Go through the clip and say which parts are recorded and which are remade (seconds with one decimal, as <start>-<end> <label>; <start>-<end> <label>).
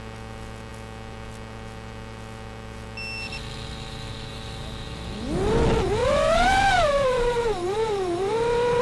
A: 0.0-6.0 recorded; 6.0-8.8 remade